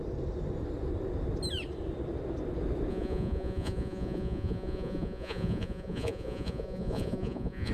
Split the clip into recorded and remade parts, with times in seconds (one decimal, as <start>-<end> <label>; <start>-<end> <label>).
0.0-2.9 recorded; 2.9-7.7 remade